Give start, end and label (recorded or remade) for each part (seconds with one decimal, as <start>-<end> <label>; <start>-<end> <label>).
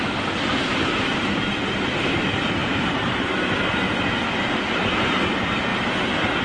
0.0-6.4 recorded